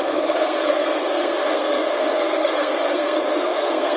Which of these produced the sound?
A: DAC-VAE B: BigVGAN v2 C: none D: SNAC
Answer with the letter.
D